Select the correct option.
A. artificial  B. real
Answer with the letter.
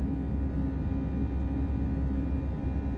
B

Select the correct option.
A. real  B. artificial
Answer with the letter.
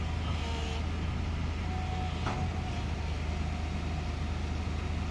A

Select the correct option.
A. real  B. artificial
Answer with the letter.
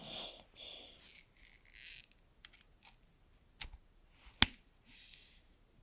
A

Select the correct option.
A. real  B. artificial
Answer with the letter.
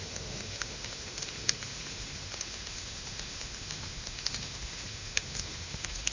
B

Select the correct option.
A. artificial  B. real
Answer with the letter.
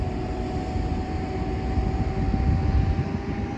B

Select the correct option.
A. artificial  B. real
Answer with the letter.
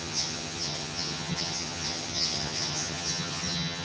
A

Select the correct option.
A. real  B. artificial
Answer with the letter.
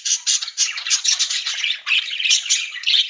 B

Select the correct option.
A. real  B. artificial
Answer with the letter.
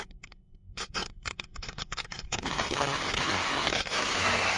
B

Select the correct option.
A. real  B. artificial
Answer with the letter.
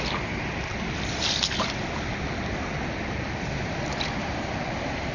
A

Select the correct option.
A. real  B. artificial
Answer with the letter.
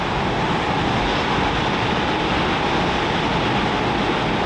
A